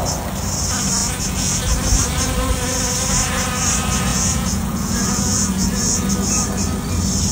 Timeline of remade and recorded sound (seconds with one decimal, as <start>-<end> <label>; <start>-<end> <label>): 0.0-1.0 recorded; 1.0-1.6 remade; 1.6-4.1 recorded; 4.1-6.1 remade; 6.1-7.3 recorded